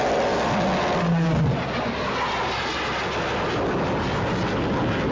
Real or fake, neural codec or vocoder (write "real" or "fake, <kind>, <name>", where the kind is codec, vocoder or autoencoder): real